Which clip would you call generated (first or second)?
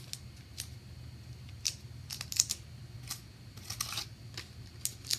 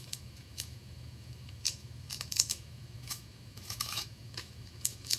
second